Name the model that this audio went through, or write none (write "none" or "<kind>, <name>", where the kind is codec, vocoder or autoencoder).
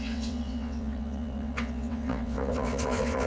vocoder, WaveNeXt